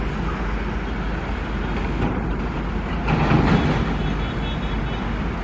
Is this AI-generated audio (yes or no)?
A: no